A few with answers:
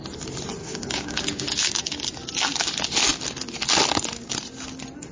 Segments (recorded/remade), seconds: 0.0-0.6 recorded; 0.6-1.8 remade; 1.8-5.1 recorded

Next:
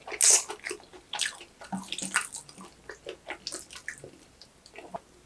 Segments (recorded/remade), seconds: 0.0-5.3 recorded

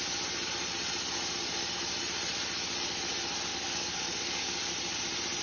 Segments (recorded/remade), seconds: 0.0-3.5 recorded; 3.5-4.7 remade; 4.7-5.4 recorded

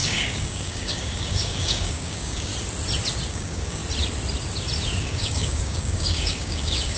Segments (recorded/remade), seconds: 0.0-2.5 remade; 2.5-3.3 recorded; 3.3-3.8 remade; 3.8-5.0 recorded; 5.0-7.0 remade

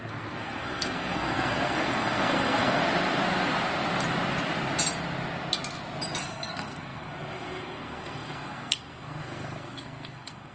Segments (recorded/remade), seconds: 0.0-2.8 remade; 2.8-6.2 recorded; 6.2-10.5 remade

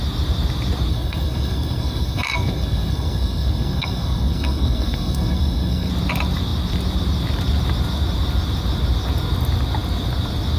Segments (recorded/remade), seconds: 0.0-0.9 recorded; 0.9-5.9 remade; 5.9-10.6 recorded